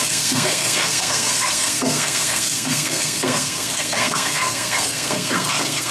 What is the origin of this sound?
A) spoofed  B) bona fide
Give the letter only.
A